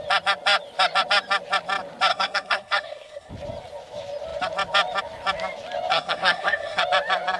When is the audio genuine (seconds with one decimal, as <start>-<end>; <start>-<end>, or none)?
0.0-2.1; 3.3-5.9; 6.8-7.4